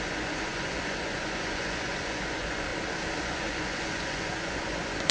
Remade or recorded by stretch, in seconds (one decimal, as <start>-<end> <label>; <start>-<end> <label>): 0.0-2.7 remade; 2.7-3.2 recorded; 3.2-5.1 remade